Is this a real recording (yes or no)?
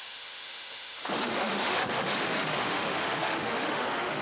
no